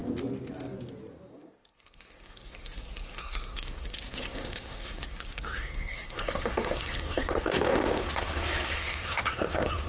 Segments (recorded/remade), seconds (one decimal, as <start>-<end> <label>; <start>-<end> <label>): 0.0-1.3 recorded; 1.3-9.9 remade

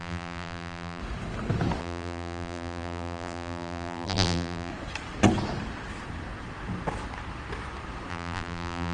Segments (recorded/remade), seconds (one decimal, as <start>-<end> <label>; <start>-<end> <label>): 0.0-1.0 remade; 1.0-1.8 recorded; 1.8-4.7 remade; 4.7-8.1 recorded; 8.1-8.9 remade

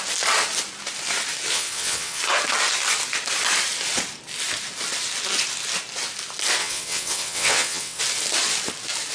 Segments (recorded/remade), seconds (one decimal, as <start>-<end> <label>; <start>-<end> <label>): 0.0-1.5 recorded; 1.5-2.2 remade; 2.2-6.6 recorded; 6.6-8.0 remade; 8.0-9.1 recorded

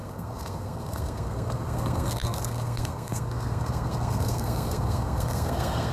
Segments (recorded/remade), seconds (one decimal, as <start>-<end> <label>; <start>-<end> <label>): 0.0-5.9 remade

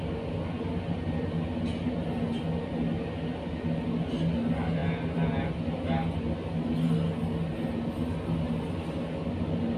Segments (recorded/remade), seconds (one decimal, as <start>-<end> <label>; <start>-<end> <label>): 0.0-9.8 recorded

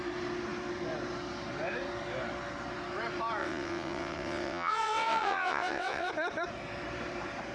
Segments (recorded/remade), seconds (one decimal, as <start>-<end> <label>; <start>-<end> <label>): 0.0-3.4 recorded; 3.4-6.1 remade; 6.1-7.5 recorded

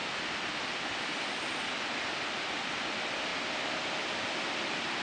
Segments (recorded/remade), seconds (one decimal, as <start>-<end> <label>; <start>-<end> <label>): 0.0-5.0 recorded